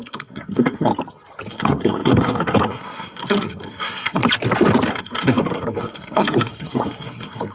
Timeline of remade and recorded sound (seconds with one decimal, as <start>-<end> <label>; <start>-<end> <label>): 0.0-0.9 remade; 0.9-1.5 recorded; 1.5-4.2 remade; 4.2-4.9 recorded; 4.9-7.5 remade